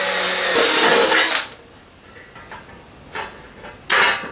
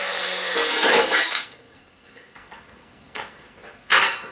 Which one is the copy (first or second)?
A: second